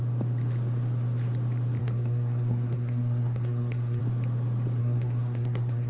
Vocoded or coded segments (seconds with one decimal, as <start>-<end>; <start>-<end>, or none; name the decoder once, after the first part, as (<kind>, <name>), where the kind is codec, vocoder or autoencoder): 1.8-4.0 (codec, SNAC); 4.8-5.9